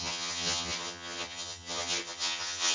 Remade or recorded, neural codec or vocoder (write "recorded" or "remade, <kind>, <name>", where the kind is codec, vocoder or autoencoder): remade, vocoder, HiFi-GAN